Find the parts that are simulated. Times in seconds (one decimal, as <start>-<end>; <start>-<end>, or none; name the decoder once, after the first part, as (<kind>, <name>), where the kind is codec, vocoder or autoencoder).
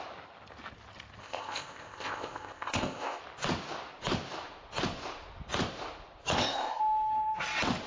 1.2-3.2 (codec, ZipCodec); 6.3-6.8